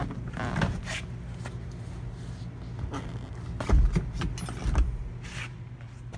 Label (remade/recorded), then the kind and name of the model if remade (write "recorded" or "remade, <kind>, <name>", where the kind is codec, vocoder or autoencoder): recorded